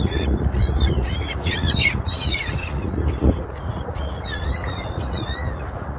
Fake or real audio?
fake